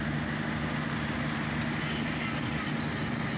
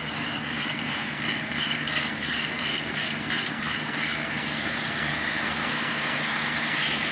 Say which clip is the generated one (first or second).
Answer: second